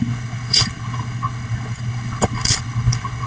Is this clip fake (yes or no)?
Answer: yes